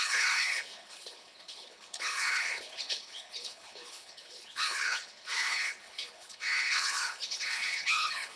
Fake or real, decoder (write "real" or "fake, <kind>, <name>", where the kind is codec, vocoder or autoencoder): fake, codec, HILCodec